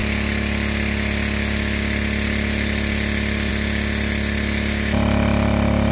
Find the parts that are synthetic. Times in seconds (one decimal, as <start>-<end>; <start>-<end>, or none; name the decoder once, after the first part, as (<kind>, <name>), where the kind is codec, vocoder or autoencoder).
none